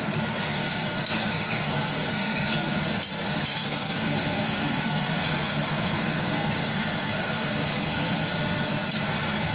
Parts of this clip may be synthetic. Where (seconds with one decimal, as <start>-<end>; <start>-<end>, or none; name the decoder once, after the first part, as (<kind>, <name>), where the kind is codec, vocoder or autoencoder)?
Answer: 0.0-9.5 (codec, SNAC)